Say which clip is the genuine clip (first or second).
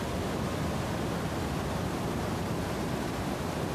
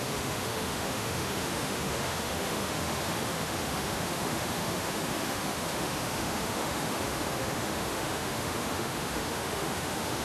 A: first